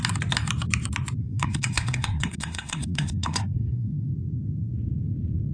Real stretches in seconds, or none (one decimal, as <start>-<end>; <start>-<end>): 0.0-1.2; 4.1-5.5